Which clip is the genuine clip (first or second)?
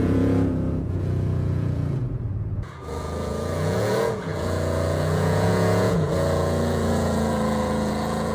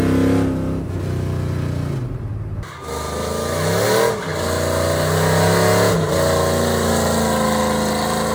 second